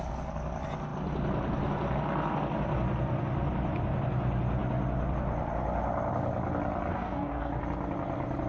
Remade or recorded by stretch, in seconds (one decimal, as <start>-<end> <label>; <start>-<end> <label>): 0.0-6.9 recorded; 6.9-7.6 remade; 7.6-8.5 recorded